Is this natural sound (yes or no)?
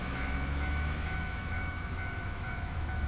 no